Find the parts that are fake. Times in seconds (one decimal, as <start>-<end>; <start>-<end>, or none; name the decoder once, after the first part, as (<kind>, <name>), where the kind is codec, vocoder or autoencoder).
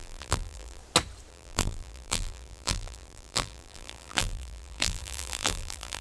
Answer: 0.0-0.8 (vocoder, BigVGAN v2); 1.3-6.0